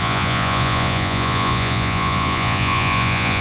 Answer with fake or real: fake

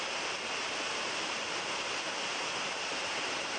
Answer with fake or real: real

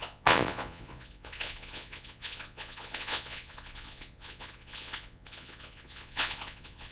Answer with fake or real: fake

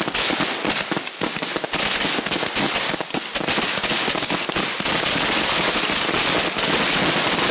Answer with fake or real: real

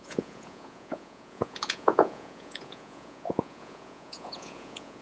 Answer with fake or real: fake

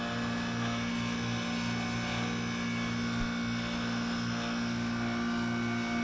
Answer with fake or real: real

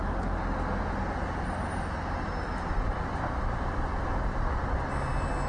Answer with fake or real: real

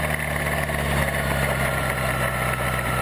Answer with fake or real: real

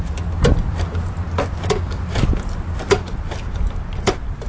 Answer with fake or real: real